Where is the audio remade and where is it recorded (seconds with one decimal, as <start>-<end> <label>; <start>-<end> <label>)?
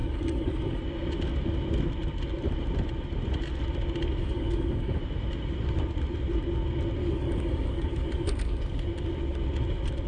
0.0-0.8 remade; 0.8-4.2 recorded; 4.2-5.0 remade; 5.0-7.0 recorded; 7.0-8.6 remade; 8.6-10.1 recorded